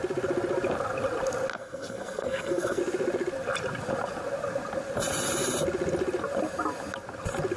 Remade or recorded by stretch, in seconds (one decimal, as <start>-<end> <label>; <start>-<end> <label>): 0.0-1.5 recorded; 1.5-2.8 remade; 2.8-7.6 recorded